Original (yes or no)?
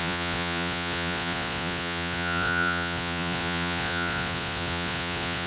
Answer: no